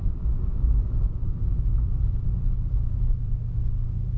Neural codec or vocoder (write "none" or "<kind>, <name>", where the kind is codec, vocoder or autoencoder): none